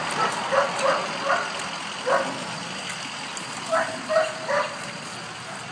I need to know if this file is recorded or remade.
recorded